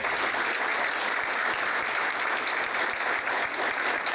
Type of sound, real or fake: real